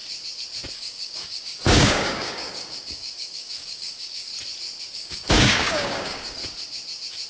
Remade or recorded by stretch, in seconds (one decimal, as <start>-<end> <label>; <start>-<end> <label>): 0.0-0.7 recorded; 0.7-4.3 remade; 4.3-4.8 recorded; 4.8-6.4 remade; 6.4-7.3 recorded